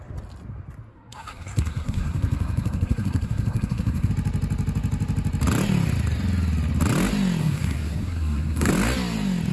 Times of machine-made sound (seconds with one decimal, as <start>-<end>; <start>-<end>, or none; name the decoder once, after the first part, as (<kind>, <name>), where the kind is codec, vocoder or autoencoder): 0.9-4.1 (codec, SNAC); 7.4-8.7